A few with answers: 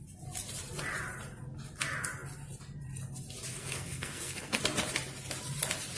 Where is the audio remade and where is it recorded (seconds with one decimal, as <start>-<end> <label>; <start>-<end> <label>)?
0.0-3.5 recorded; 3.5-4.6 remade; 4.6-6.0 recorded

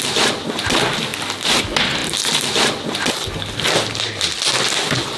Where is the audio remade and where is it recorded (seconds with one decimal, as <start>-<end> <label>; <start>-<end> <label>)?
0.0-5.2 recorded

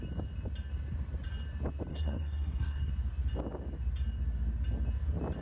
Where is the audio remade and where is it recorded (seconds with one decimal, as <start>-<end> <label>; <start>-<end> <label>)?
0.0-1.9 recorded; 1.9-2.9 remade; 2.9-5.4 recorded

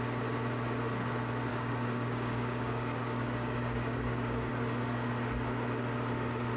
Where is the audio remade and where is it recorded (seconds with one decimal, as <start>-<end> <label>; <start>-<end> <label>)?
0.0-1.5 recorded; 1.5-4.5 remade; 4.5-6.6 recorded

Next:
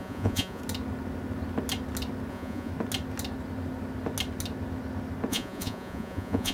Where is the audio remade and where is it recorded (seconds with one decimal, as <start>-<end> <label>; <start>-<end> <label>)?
0.0-0.6 remade; 0.6-2.3 recorded; 2.3-2.7 remade; 2.7-5.3 recorded; 5.3-6.5 remade

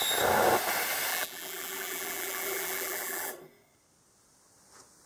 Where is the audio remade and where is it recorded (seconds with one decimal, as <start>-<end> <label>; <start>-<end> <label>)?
0.0-1.1 recorded; 1.1-3.3 remade; 3.3-5.1 recorded